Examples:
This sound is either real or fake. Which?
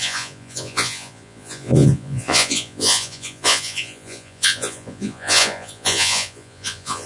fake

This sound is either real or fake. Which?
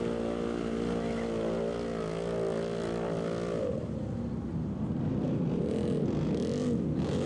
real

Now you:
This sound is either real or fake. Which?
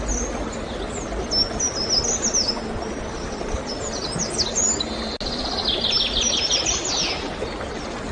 real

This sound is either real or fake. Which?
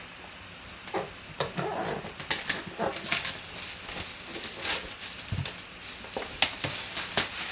real